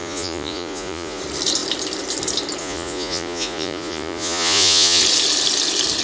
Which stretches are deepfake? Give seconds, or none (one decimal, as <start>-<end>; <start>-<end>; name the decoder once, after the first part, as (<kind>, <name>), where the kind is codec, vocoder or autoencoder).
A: 0.0-1.2 (vocoder, Vocos); 2.6-5.0